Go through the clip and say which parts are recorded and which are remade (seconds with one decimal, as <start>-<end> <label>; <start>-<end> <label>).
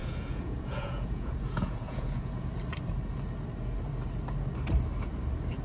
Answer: 0.0-2.5 remade; 2.5-5.6 recorded